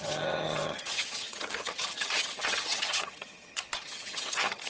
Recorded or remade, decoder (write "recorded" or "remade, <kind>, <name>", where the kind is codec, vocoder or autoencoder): remade, vocoder, HiFi-GAN